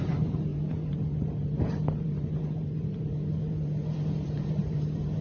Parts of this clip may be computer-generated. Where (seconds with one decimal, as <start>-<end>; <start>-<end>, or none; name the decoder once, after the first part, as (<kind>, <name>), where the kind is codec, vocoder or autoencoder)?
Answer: 0.0-5.2 (vocoder, BigVGAN v2)